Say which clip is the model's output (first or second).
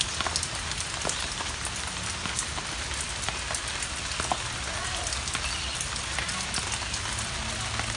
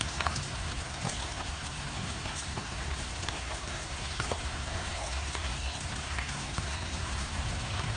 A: second